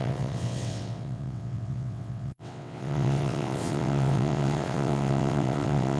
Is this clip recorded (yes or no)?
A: no